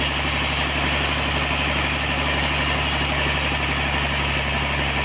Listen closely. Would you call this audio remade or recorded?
recorded